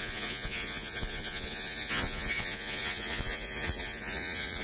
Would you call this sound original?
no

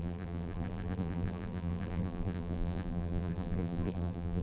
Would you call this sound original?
no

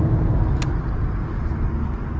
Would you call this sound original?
yes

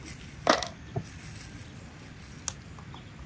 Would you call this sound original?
yes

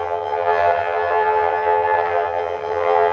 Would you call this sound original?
no